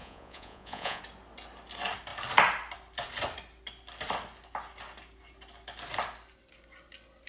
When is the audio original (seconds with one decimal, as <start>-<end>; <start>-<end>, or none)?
1.0-7.3